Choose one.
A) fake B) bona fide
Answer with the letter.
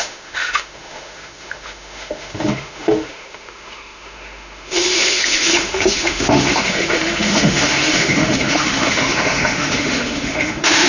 A